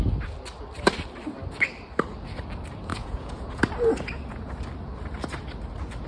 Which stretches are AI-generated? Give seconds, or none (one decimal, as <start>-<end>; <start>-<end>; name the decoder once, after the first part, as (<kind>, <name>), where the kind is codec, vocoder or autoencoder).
2.9-3.6 (vocoder, Vocos)